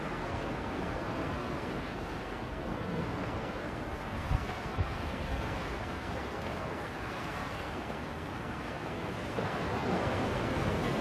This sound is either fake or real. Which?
fake